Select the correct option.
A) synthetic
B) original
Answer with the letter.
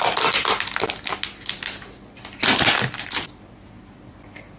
B